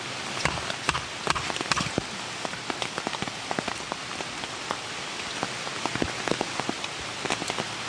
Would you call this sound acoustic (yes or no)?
yes